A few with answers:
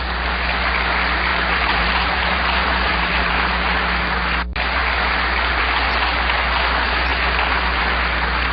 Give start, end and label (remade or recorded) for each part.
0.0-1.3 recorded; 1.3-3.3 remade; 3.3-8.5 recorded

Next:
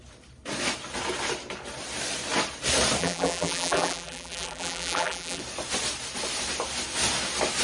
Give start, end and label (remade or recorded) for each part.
0.0-3.0 recorded; 3.0-5.4 remade; 5.4-7.6 recorded